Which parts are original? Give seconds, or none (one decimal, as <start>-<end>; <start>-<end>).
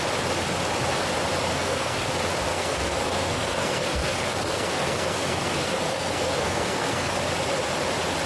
0.0-1.5; 2.1-2.5; 7.1-8.3